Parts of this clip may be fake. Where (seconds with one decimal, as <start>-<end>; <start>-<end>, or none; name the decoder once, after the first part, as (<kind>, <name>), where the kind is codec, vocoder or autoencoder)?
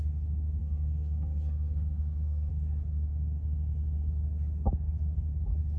0.6-2.5 (codec, SNAC)